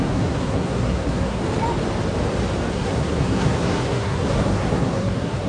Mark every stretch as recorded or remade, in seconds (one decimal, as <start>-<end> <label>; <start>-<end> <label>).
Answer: 0.0-1.4 remade; 1.4-2.7 recorded; 2.7-5.5 remade